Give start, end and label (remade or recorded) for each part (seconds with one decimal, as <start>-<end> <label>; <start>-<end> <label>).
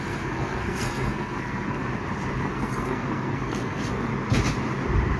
0.0-1.9 remade; 1.9-2.4 recorded; 2.4-4.1 remade; 4.1-5.2 recorded